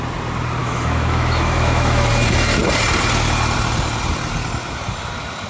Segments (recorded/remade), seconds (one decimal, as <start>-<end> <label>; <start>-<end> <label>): 0.0-0.6 recorded; 0.6-2.1 remade; 2.1-5.5 recorded